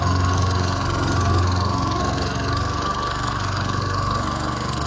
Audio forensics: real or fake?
fake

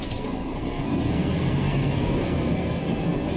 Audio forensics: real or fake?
fake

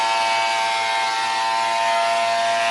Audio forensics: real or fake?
real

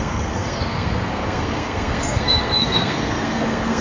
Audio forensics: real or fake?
fake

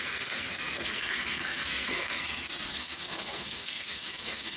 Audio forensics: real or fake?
fake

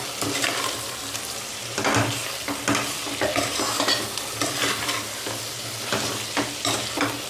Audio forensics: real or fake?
real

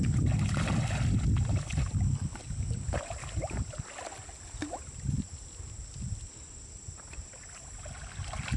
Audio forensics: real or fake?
real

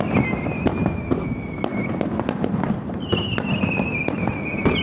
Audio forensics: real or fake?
real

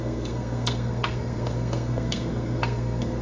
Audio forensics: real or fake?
fake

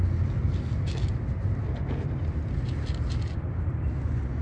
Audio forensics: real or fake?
real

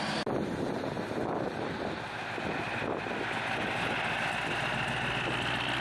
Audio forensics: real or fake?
real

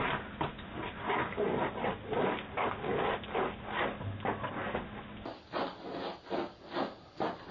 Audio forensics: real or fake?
real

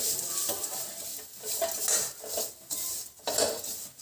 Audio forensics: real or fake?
real